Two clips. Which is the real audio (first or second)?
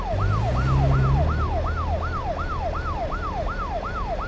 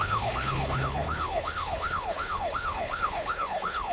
first